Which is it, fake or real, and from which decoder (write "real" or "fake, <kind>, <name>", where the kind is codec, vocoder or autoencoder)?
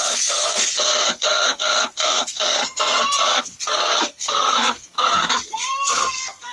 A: fake, codec, SNAC